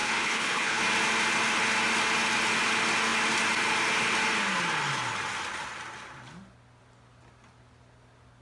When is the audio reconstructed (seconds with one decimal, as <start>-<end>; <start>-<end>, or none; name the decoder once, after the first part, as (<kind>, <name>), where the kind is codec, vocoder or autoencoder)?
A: 0.0-0.8 (codec, HILCodec)